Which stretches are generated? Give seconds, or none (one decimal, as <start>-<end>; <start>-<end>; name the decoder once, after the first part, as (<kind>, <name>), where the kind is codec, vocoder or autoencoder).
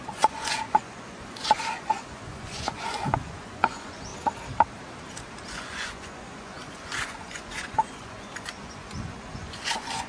0.0-4.1 (vocoder, Vocos); 5.5-10.1